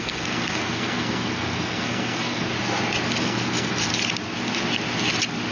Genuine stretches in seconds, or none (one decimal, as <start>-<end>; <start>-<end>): 2.5-3.2; 3.9-5.5